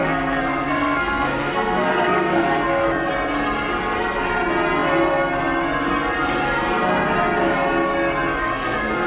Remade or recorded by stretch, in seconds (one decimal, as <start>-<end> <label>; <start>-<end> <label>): 0.0-3.1 remade; 3.1-8.4 recorded; 8.4-9.1 remade